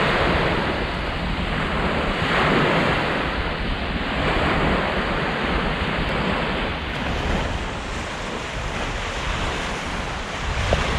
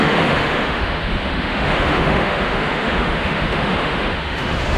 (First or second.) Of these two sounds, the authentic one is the first